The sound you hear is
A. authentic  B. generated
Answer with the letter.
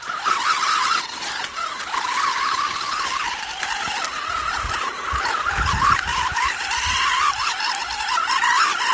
A